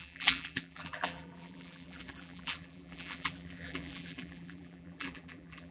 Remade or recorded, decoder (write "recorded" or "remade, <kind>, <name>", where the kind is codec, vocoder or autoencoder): remade, vocoder, BigVGAN v2